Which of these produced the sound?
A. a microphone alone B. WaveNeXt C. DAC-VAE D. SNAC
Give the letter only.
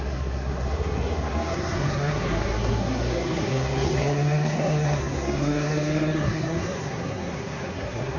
D